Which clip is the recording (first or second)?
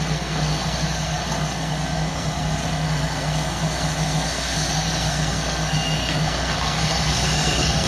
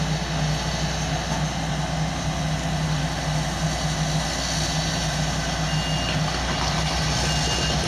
second